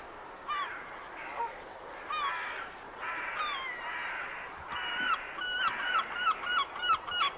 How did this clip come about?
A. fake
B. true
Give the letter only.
A